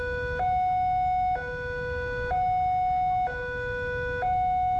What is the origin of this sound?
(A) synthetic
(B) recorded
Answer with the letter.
B